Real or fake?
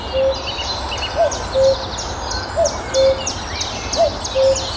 real